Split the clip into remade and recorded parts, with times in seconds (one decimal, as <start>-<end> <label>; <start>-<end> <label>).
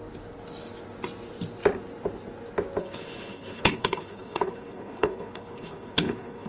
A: 0.0-2.8 recorded; 2.8-6.5 remade